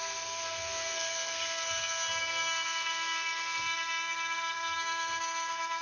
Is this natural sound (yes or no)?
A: no